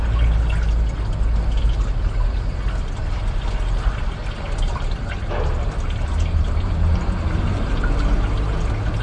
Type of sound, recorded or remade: recorded